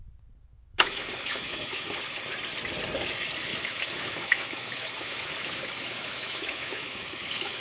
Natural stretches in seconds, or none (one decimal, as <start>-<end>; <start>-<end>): 0.0-0.5; 2.0-3.5